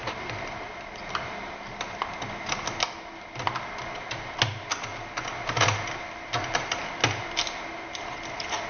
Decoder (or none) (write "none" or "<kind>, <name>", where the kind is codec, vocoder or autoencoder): none